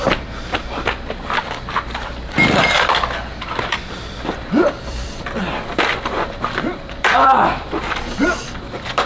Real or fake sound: fake